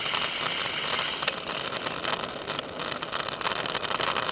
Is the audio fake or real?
real